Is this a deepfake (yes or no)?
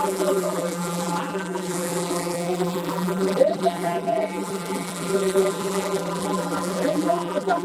yes